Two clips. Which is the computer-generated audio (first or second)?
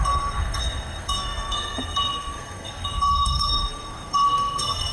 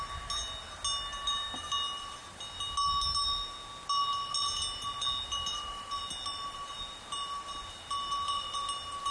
first